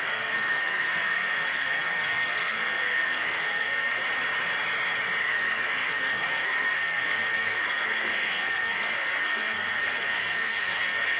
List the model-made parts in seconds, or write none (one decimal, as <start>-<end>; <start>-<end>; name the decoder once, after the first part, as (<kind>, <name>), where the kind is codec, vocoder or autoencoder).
0.0-4.0 (codec, SNAC); 5.2-11.2